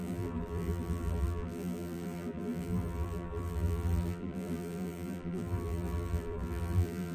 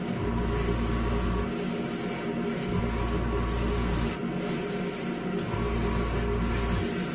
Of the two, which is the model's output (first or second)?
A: first